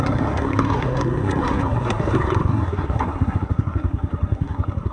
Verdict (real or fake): fake